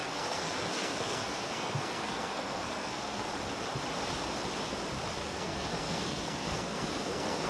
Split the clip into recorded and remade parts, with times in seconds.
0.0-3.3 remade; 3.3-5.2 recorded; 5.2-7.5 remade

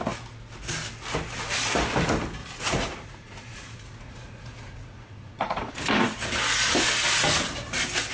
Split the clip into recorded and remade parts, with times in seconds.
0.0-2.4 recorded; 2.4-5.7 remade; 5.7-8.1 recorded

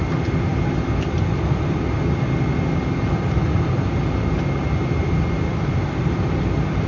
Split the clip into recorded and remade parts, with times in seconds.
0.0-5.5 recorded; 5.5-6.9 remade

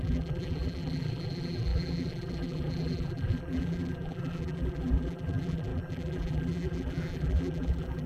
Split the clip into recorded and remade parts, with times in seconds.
0.0-8.1 remade

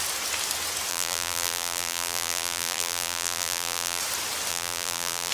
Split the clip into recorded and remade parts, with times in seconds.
0.0-0.9 recorded; 0.9-4.0 remade; 4.0-4.5 recorded; 4.5-5.3 remade

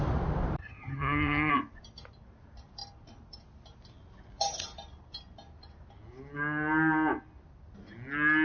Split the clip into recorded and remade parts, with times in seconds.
0.0-0.6 recorded; 0.6-1.5 remade; 1.5-8.4 recorded

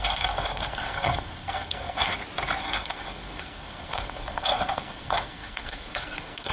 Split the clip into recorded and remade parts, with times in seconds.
0.0-2.1 remade; 2.1-2.6 recorded; 2.6-6.5 remade

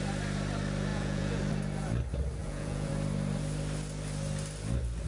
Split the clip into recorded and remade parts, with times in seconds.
0.0-0.9 recorded; 0.9-1.4 remade; 1.4-2.4 recorded; 2.4-2.9 remade; 2.9-5.1 recorded